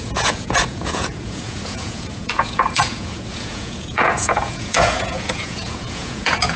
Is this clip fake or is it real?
fake